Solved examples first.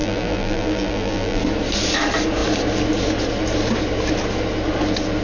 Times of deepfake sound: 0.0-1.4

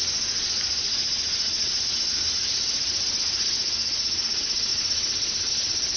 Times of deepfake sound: 1.6-3.6

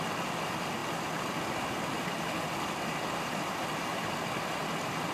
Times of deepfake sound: none

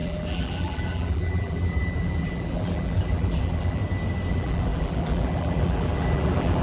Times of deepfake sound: 0.0-3.8; 4.3-6.6

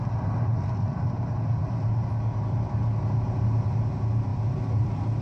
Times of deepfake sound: 4.3-5.2

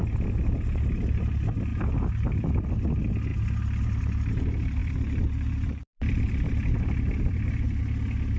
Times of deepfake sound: 4.8-7.8

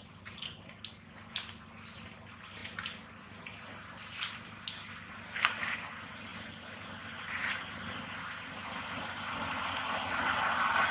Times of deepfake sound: none